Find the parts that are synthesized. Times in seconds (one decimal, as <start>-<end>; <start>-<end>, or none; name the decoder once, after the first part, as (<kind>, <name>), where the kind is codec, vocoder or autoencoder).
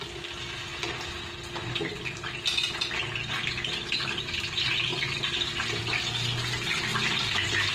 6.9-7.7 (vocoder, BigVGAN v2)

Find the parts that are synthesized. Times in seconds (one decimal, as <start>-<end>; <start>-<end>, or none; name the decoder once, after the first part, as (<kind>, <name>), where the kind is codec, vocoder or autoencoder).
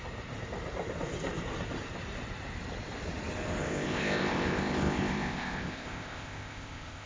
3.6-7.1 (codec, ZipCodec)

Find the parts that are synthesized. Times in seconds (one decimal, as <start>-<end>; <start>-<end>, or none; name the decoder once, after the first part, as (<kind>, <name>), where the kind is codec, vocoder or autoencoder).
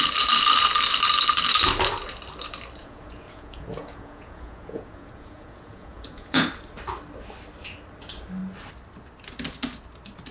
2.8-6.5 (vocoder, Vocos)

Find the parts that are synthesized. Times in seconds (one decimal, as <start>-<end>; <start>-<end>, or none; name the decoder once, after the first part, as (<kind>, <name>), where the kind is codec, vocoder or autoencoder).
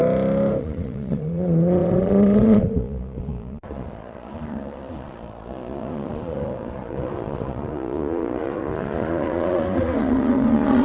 0.6-10.8 (vocoder, Vocos)